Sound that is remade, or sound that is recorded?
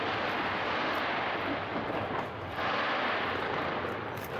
recorded